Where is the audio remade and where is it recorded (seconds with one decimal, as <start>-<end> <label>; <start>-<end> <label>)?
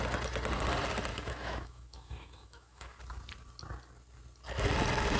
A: 0.0-1.1 recorded; 1.1-3.0 remade; 3.0-5.2 recorded